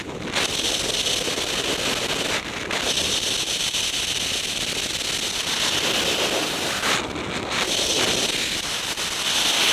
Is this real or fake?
real